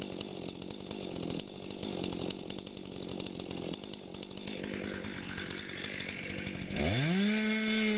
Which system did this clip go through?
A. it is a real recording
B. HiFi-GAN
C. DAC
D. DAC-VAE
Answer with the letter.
A